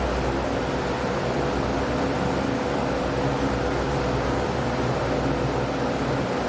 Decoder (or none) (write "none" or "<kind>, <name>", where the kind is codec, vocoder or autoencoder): none